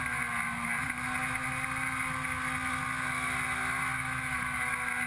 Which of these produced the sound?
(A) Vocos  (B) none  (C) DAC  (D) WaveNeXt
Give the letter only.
B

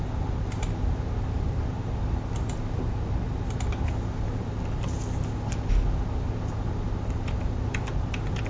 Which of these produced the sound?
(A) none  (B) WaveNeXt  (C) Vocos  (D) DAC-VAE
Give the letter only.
A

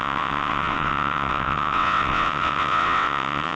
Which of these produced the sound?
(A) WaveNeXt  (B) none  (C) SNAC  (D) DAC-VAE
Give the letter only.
A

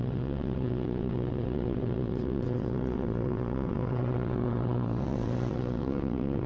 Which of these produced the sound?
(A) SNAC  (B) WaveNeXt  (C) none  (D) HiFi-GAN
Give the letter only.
B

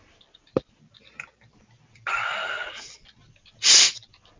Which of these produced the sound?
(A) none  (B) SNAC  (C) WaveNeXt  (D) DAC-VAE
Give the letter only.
A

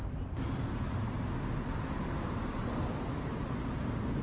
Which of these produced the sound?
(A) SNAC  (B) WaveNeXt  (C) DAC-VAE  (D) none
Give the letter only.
D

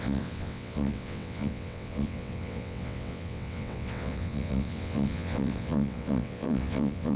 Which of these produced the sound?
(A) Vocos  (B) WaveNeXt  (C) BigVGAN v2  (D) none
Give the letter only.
B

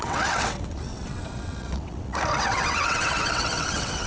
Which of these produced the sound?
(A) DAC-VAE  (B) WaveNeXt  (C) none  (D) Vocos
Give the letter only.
B